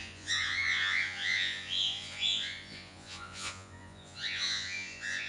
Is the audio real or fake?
fake